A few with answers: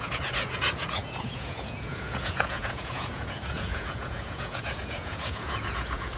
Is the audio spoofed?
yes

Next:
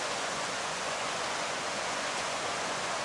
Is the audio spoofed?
yes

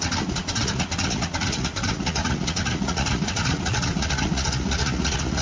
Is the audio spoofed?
yes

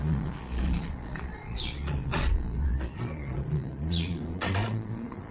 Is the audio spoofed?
yes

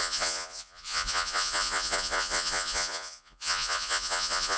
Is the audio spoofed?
yes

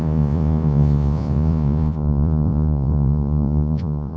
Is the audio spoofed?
yes